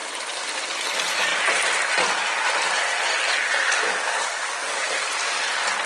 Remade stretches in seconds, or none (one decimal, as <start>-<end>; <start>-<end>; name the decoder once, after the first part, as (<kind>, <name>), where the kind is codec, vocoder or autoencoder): 3.9-4.9 (codec, DAC)